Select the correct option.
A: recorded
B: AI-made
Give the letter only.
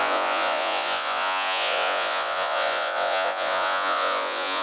B